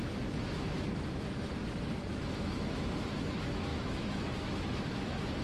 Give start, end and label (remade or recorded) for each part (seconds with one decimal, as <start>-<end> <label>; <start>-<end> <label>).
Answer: 0.0-5.4 remade